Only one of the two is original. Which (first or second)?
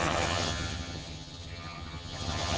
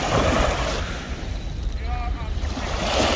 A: second